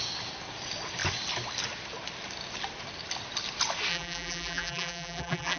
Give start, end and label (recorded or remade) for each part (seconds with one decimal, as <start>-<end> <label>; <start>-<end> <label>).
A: 0.0-3.9 recorded; 3.9-5.6 remade